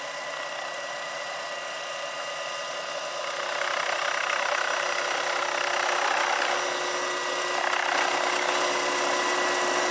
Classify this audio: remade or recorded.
recorded